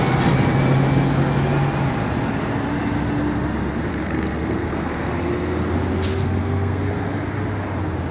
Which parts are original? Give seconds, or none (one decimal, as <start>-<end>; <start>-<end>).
0.0-3.9; 5.1-6.2; 6.8-8.1